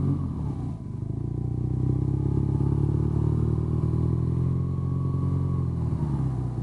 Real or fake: real